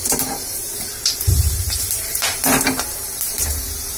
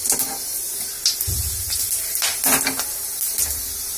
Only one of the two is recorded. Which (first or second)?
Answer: second